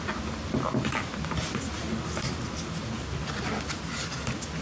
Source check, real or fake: real